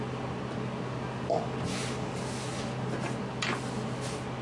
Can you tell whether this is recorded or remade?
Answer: recorded